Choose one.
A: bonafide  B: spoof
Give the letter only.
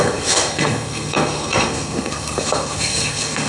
B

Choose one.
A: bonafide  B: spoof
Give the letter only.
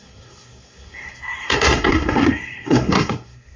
B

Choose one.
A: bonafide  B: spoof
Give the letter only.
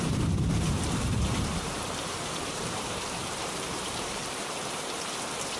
B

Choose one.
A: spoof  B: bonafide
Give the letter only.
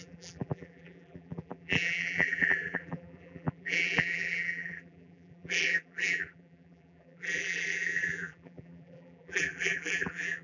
A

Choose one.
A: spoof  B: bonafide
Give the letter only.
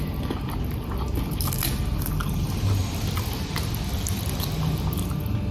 B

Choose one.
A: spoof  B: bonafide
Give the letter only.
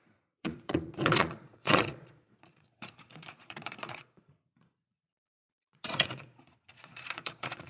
A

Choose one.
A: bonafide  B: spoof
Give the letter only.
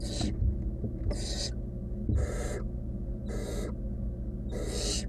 A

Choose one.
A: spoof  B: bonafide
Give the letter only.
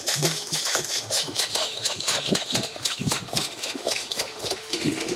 A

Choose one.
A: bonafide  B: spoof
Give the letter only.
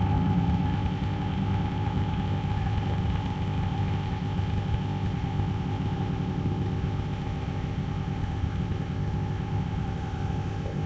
B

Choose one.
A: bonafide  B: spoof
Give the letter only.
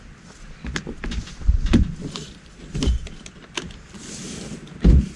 A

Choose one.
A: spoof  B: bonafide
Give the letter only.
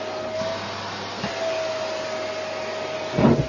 B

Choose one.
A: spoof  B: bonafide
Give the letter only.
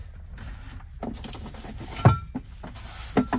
B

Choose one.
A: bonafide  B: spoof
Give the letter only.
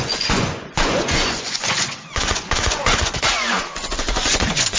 B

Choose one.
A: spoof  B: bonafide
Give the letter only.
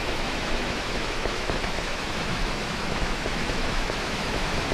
A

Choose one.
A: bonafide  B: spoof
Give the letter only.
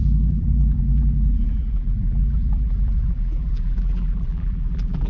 B